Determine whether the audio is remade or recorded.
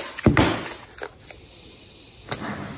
recorded